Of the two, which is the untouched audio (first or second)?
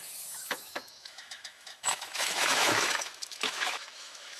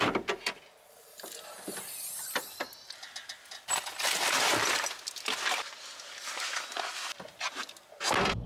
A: second